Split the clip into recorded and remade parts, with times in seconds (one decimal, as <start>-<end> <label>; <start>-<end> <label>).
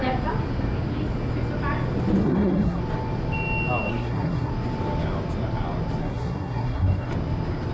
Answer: 0.0-2.2 recorded; 2.2-2.8 remade; 2.8-3.9 recorded; 3.9-4.5 remade; 4.5-6.0 recorded; 6.0-7.1 remade; 7.1-7.7 recorded